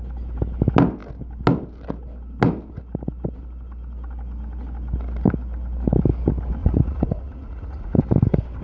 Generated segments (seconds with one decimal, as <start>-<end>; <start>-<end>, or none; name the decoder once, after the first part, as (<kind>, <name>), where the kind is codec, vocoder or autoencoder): 6.6-8.0 (vocoder, Vocos)